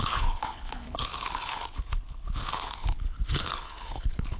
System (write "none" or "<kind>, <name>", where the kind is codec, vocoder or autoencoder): codec, HILCodec